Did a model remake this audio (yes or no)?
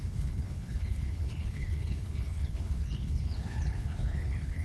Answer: yes